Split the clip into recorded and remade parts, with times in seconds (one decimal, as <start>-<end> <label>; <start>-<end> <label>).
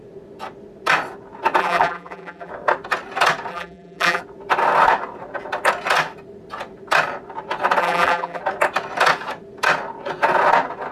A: 0.0-1.6 recorded; 1.6-2.5 remade; 2.5-3.5 recorded; 3.5-4.2 remade; 4.2-7.8 recorded; 7.8-8.4 remade; 8.4-10.9 recorded